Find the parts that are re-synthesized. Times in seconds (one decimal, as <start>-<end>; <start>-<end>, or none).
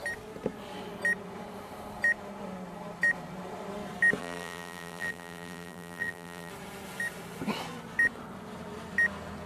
4.2-6.5